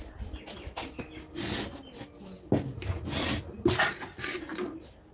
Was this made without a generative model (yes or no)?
yes